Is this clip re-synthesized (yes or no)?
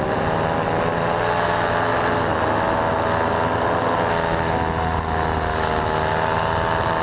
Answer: no